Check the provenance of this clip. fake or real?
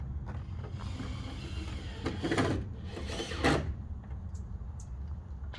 real